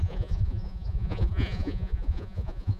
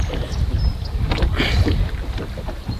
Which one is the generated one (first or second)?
first